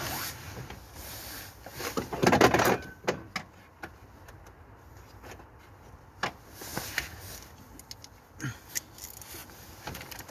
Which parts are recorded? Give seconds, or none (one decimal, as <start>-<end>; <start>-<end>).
0.0-9.4